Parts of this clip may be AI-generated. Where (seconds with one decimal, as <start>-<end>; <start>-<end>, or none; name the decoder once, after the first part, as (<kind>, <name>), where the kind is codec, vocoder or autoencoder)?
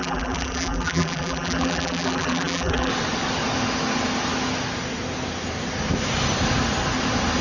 0.0-2.9 (vocoder, BigVGAN v2)